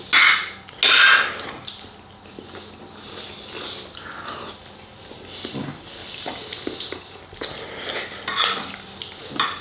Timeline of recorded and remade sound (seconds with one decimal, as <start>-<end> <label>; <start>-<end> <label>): 0.0-9.6 recorded